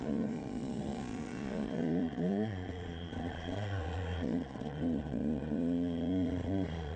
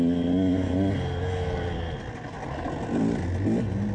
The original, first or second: second